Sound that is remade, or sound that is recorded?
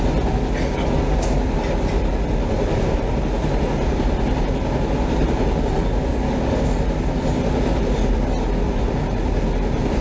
recorded